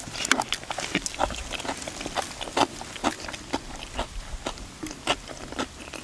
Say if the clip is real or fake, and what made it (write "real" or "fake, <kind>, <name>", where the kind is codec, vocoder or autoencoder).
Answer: real